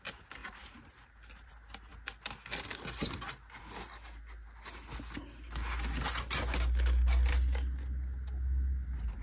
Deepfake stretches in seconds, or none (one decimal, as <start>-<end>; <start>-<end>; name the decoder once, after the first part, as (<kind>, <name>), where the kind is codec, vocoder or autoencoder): 0.4-1.5 (vocoder, BigVGAN v2)